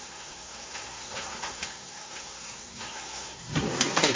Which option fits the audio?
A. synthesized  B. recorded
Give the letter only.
A